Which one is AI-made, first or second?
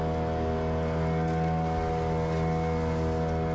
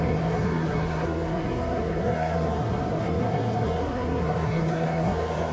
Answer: second